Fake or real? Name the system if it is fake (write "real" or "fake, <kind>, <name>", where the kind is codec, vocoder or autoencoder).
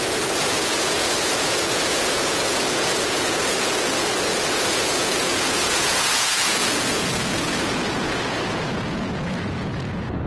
fake, vocoder, Vocos